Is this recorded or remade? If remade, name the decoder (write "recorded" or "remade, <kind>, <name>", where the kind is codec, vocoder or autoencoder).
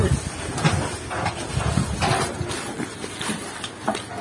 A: recorded